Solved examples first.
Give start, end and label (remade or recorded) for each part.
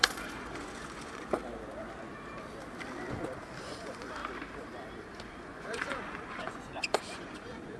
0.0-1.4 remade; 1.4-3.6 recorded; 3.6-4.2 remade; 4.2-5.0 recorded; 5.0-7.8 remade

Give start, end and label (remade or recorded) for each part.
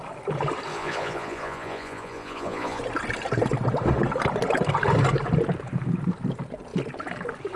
0.0-0.7 recorded; 0.7-2.8 remade; 2.8-7.6 recorded